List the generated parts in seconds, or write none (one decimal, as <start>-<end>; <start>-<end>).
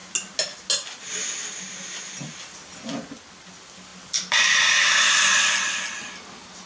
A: none